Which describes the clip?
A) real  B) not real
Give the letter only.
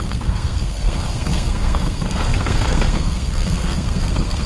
B